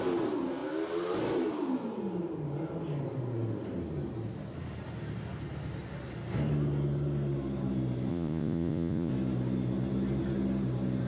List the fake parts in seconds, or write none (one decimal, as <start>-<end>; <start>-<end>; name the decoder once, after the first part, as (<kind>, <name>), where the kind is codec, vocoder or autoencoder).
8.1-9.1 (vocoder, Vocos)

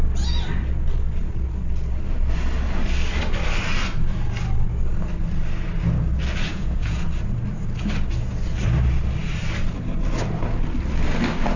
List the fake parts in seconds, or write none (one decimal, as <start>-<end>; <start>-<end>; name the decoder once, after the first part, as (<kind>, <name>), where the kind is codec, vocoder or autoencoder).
6.5-7.1 (vocoder, Vocos)

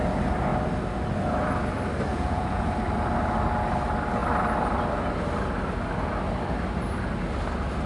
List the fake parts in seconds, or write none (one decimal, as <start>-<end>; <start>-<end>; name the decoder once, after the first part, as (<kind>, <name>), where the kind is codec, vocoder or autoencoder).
2.1-2.6 (vocoder, Vocos)

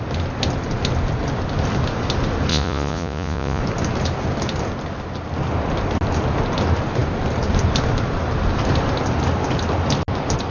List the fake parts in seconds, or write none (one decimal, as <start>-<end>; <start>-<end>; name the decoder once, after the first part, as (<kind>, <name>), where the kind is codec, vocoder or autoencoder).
2.5-3.6 (vocoder, Vocos)

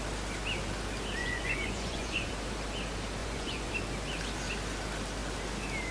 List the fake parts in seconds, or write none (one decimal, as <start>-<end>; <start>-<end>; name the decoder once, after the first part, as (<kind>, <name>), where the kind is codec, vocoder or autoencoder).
1.2-2.3 (vocoder, Vocos); 3.2-3.7